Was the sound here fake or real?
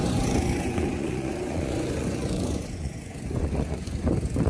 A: fake